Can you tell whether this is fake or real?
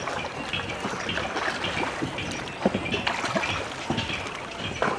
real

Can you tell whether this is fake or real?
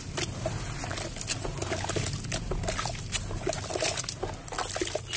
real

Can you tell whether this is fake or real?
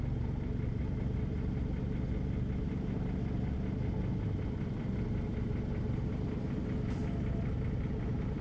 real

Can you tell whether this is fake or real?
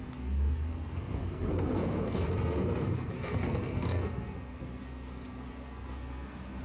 fake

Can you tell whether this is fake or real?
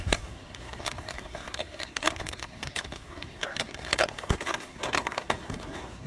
fake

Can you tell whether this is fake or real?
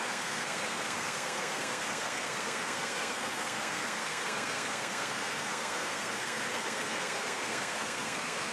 fake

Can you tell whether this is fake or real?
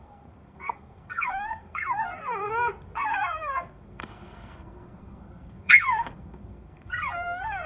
fake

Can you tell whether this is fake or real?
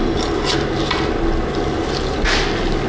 real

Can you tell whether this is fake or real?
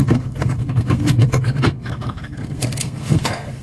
fake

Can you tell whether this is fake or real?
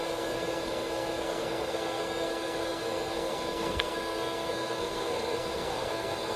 fake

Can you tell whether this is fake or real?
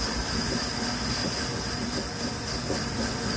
real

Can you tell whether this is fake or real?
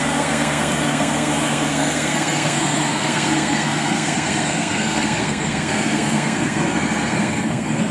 fake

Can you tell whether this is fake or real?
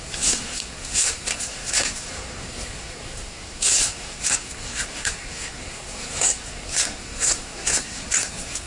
fake